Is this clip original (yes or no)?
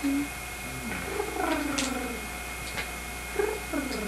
yes